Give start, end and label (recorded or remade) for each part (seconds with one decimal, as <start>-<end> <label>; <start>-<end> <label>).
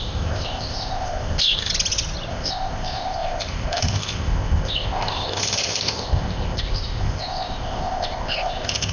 0.0-1.7 remade; 1.7-2.3 recorded; 2.3-8.9 remade